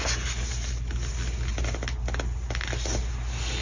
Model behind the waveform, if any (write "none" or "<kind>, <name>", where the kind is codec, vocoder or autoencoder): none